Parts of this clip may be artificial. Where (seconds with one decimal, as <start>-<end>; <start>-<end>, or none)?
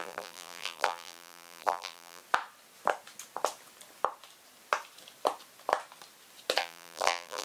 0.0-2.2; 6.6-7.4